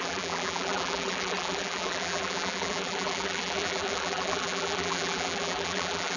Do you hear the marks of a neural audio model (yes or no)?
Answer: yes